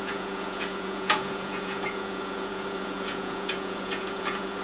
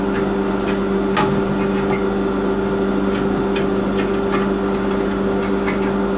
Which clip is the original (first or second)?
second